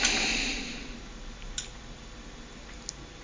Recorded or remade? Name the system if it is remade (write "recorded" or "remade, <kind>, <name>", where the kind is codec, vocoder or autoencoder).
recorded